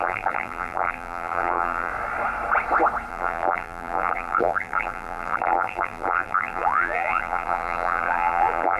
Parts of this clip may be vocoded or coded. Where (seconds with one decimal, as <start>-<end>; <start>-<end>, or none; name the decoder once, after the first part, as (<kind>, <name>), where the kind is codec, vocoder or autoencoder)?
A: 0.0-1.9 (vocoder, BigVGAN v2); 3.1-8.8